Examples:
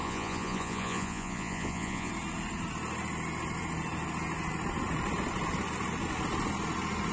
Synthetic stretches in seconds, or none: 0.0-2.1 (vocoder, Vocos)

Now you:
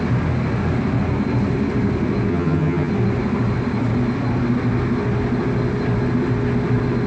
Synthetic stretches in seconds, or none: 2.3-2.9 (vocoder, HiFi-GAN)

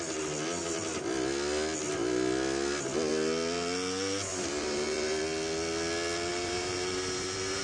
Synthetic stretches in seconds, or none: 4.3-5.2 (vocoder, BigVGAN v2); 6.3-7.6

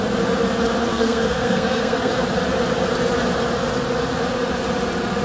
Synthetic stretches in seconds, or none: 0.9-2.1 (codec, SNAC)